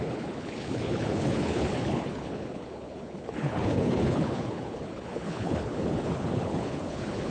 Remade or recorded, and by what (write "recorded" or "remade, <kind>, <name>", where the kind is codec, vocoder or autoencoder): remade, codec, HILCodec